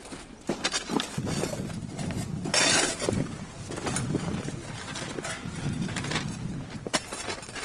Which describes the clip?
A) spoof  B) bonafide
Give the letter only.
B